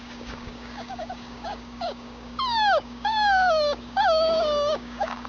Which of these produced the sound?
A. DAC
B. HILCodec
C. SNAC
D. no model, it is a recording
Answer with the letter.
A